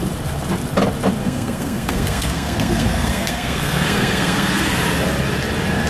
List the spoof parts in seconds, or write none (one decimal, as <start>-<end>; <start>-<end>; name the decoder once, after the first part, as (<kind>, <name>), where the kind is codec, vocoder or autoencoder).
1.2-4.7 (codec, SNAC)